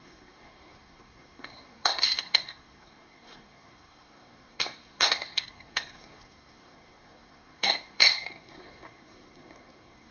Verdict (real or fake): fake